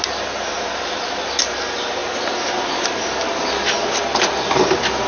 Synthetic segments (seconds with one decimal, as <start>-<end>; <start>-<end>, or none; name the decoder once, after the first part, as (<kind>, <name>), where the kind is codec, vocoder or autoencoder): none